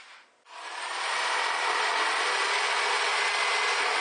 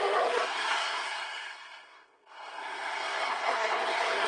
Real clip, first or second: first